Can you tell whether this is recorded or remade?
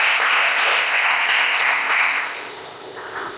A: remade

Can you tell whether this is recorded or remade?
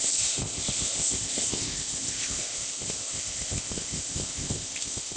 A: remade